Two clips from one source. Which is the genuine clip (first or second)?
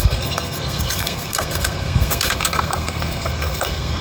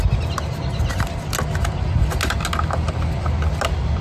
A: second